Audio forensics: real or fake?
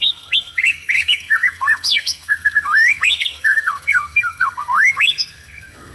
fake